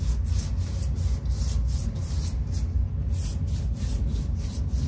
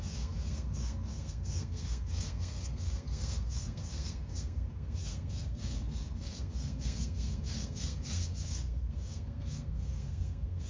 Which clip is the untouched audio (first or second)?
first